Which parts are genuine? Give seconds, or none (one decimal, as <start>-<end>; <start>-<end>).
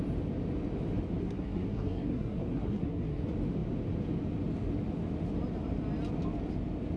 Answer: 0.0-1.2; 3.2-7.0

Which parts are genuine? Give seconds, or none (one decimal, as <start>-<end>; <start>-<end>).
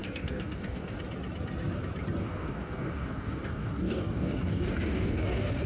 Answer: 1.0-2.2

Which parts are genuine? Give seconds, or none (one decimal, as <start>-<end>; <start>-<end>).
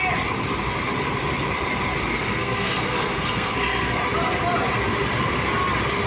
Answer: 0.0-2.1; 4.0-6.1